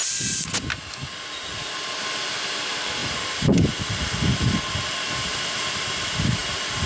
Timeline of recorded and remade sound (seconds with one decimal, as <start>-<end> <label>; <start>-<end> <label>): 0.0-6.9 recorded